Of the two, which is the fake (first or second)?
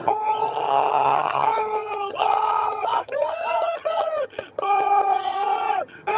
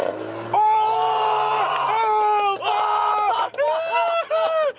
first